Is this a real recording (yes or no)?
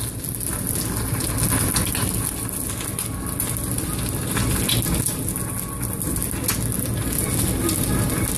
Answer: yes